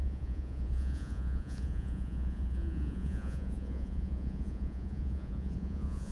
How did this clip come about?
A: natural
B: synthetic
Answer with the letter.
B